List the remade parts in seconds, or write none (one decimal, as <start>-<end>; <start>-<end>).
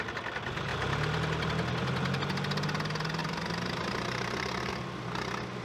3.2-4.7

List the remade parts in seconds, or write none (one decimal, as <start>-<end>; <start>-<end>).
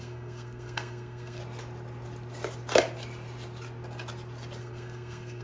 0.0-1.4; 4.6-5.4